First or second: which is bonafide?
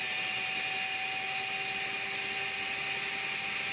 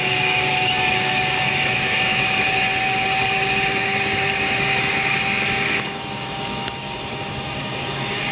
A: first